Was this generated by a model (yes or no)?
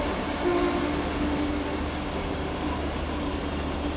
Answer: no